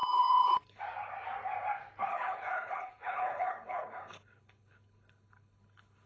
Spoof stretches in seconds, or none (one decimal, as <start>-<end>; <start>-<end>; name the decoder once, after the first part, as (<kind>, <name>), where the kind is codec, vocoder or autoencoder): 0.0-0.8 (codec, HILCodec); 2.1-6.1